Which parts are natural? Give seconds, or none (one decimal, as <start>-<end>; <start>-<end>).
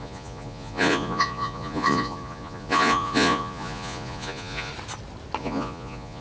4.7-5.4